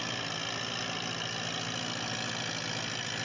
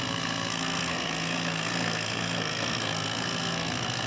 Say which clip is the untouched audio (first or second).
first